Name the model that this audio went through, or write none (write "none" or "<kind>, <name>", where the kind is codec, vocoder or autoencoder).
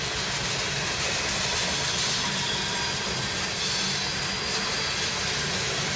none